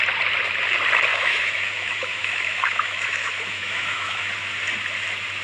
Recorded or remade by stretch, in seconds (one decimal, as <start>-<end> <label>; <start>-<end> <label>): 0.0-1.1 recorded; 1.1-4.3 remade; 4.3-5.4 recorded